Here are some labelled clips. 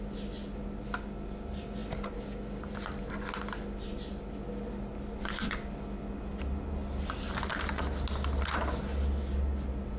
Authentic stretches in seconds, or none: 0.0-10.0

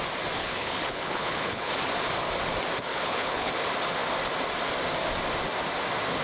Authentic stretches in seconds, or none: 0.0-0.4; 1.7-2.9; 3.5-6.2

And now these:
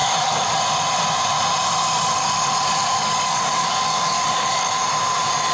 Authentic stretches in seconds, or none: 0.6-2.2; 4.8-5.5

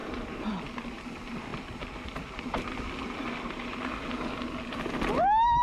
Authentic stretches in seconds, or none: 0.5-5.6

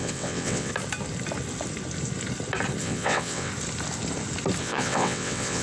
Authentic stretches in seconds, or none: 0.7-2.8; 3.5-4.6

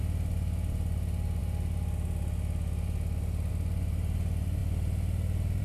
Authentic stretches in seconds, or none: 0.0-5.6

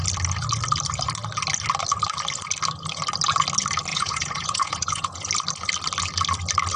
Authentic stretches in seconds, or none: 0.0-3.9; 5.3-6.8